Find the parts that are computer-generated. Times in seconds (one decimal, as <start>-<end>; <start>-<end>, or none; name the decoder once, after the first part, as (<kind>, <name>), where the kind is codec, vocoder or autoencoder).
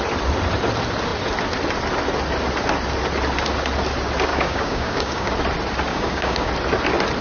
4.3-5.3 (codec, DAC); 5.9-6.5